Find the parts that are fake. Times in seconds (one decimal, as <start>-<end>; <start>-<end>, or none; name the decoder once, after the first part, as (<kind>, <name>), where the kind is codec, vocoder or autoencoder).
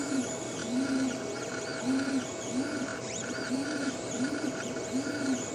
2.9-4.7 (vocoder, BigVGAN v2)